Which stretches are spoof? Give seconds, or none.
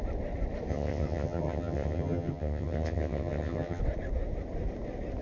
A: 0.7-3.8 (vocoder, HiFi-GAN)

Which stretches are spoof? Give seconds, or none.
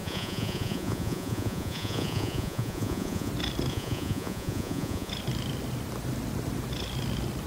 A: 0.0-3.3 (vocoder, Vocos); 3.7-5.1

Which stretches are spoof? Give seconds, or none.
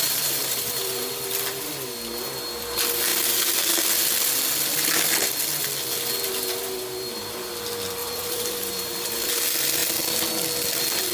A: 0.0-1.1 (vocoder, BigVGAN v2); 8.0-9.4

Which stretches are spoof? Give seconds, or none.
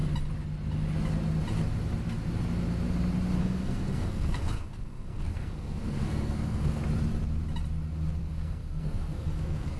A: 3.4-6.8 (codec, SNAC); 8.2-9.8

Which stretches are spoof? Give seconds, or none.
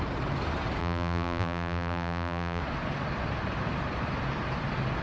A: 0.8-2.6 (vocoder, BigVGAN v2)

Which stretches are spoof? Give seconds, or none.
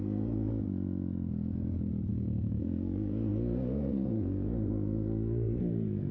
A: 0.0-0.5 (codec, SNAC); 2.1-6.1